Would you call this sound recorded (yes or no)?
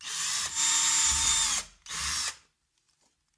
yes